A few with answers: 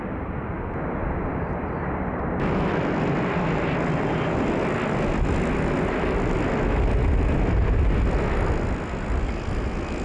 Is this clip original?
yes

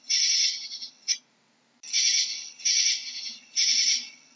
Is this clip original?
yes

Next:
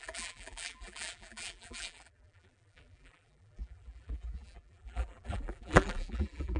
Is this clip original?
no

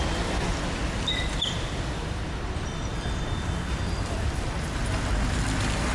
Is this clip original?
yes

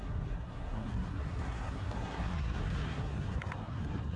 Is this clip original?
no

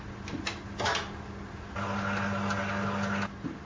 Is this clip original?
yes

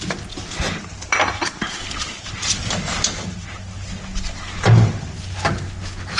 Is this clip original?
yes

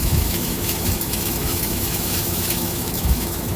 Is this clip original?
no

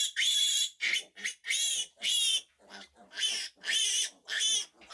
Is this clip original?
no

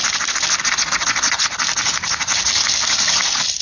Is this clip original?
yes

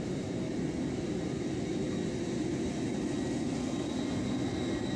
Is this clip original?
yes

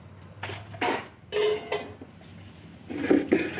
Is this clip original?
yes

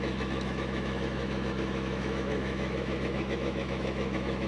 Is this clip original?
no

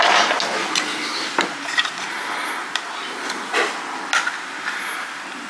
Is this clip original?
yes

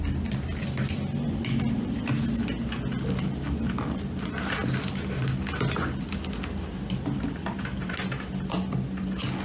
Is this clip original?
yes